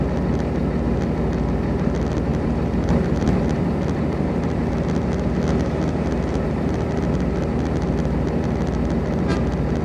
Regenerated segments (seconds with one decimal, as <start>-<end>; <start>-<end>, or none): 2.3-4.7